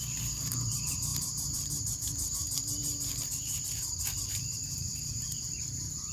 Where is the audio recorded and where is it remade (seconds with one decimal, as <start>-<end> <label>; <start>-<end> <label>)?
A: 0.0-6.1 remade